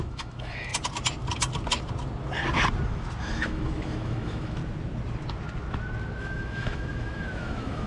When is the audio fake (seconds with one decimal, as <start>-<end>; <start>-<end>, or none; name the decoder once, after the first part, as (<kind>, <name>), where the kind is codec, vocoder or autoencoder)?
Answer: 0.0-0.7 (autoencoder, DAC-VAE); 3.3-4.6; 6.2-7.9